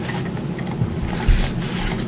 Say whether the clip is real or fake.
real